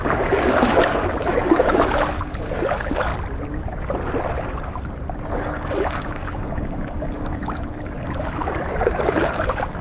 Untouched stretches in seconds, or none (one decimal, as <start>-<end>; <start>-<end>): 3.1-5.3